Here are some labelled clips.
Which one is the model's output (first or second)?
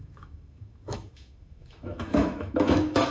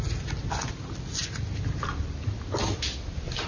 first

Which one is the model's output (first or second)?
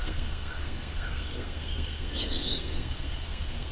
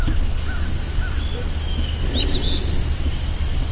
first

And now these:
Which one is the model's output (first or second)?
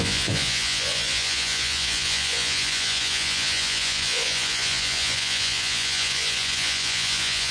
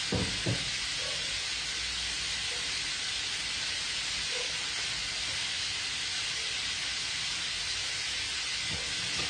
first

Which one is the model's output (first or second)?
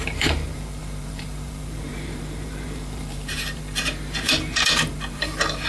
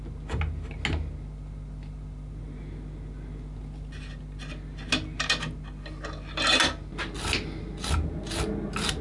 first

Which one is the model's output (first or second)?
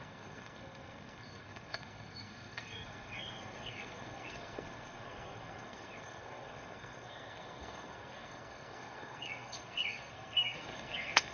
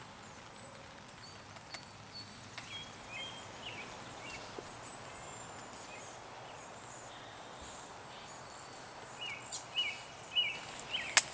first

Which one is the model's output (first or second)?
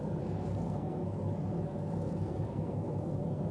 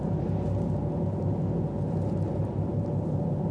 first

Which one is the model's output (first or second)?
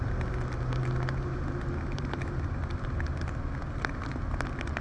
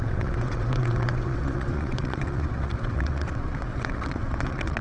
second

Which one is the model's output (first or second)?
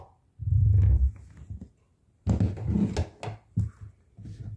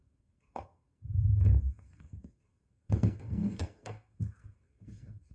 second